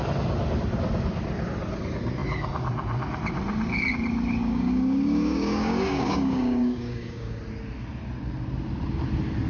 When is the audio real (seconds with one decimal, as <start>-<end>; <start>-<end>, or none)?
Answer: 0.0-4.4; 7.4-9.5